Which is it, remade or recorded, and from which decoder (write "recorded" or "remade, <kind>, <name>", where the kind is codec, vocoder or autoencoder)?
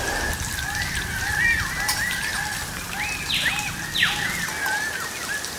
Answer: recorded